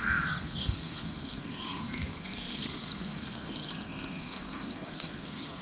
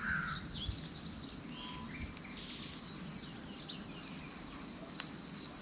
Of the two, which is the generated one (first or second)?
first